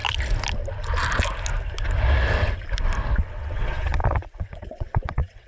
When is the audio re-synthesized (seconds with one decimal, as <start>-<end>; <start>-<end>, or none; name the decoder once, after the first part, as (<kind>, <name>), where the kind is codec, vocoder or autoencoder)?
3.3-5.5 (vocoder, WaveNeXt)